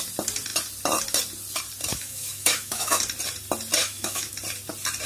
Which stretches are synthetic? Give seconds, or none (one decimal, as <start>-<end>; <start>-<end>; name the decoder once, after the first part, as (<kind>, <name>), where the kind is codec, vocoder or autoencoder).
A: 1.9-3.0 (autoencoder, DAC-VAE); 3.8-4.3